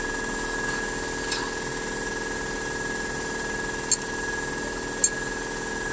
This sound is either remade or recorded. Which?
recorded